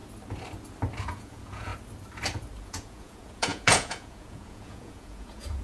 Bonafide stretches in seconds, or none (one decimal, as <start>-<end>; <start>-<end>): 0.0-1.0; 1.7-2.6